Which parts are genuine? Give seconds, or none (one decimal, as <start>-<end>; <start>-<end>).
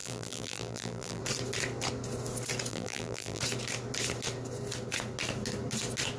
1.2-2.7; 3.4-6.2